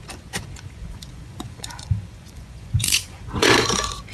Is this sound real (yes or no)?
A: no